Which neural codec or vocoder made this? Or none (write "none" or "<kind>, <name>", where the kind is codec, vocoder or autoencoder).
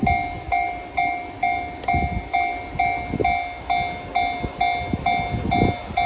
none